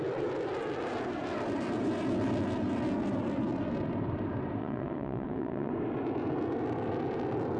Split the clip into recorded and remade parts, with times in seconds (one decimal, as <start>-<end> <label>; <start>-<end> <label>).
0.0-4.6 recorded; 4.6-5.7 remade; 5.7-7.6 recorded